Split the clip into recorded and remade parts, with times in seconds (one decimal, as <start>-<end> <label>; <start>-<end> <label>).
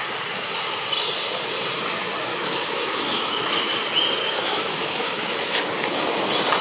0.0-2.3 recorded; 2.3-3.7 remade; 3.7-4.2 recorded; 4.2-5.6 remade; 5.6-6.6 recorded